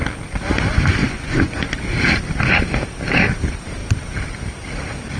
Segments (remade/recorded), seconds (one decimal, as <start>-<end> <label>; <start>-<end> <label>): 0.0-1.0 recorded; 1.0-1.8 remade; 1.8-5.2 recorded

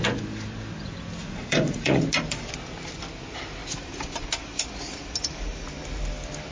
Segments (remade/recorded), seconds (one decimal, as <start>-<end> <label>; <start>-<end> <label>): 0.0-1.2 recorded; 1.2-2.0 remade; 2.0-6.5 recorded